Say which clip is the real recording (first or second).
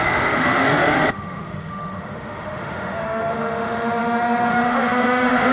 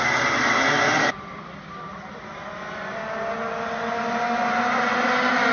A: second